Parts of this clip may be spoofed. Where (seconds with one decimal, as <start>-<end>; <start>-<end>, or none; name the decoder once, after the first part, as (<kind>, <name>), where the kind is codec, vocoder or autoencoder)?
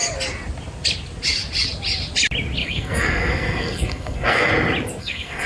2.6-4.5 (codec, SNAC); 5.0-5.5